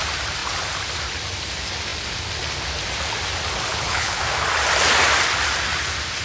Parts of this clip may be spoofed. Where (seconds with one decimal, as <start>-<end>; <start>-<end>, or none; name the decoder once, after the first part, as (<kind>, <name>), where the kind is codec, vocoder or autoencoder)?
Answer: 3.7-4.2 (codec, HILCodec)